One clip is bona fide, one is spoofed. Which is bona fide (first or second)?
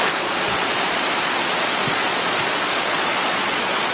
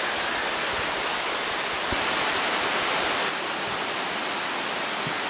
second